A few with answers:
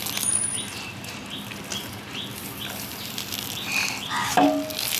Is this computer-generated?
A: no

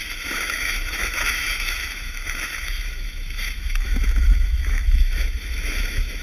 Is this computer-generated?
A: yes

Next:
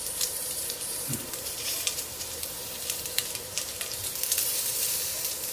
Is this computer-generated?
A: yes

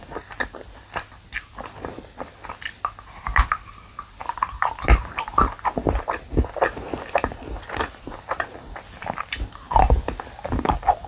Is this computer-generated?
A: no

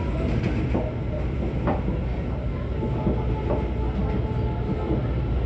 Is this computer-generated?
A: no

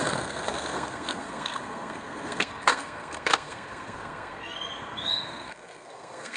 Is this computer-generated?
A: yes